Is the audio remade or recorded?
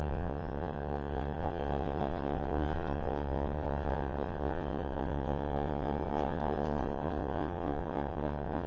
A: remade